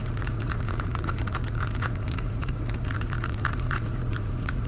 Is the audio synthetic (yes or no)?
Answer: yes